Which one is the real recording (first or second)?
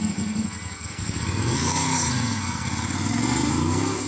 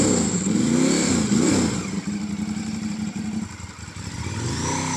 second